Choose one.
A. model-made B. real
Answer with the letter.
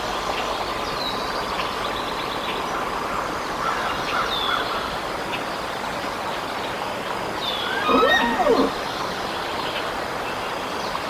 B